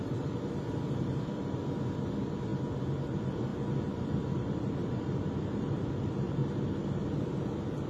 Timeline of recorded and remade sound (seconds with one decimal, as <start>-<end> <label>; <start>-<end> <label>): 0.0-2.5 remade; 2.5-3.0 recorded; 3.0-6.4 remade; 6.4-6.9 recorded; 6.9-7.9 remade